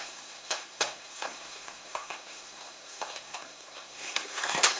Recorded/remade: remade